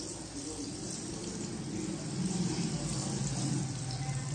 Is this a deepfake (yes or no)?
no